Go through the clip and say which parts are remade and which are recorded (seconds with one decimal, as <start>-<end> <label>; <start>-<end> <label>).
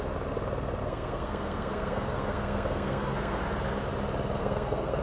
0.0-0.8 recorded; 0.8-3.4 remade; 3.4-4.4 recorded; 4.4-5.0 remade